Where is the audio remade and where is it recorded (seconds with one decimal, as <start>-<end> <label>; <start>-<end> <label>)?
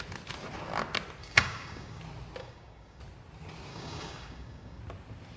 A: 0.0-1.2 recorded; 1.2-2.0 remade; 2.0-2.4 recorded; 2.4-3.0 remade; 3.0-3.7 recorded; 3.7-4.8 remade; 4.8-5.4 recorded